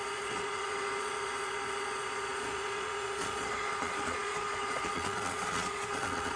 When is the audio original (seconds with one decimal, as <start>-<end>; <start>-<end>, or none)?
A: none